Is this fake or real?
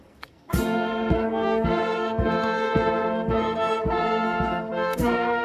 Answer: fake